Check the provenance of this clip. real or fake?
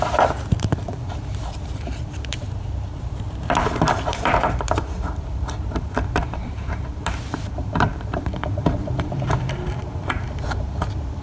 fake